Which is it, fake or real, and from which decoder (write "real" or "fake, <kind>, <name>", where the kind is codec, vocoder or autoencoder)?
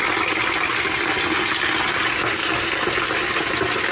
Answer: real